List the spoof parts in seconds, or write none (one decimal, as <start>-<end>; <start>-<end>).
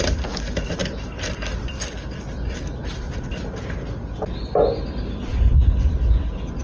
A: none